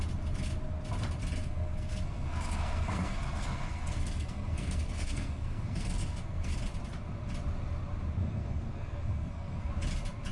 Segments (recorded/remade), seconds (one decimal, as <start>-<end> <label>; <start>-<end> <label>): 0.0-1.4 recorded; 1.4-6.6 remade; 6.6-8.2 recorded; 8.2-9.7 remade; 9.7-10.3 recorded